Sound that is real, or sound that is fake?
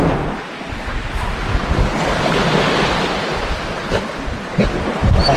real